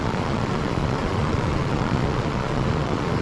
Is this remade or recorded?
remade